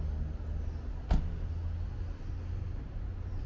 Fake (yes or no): no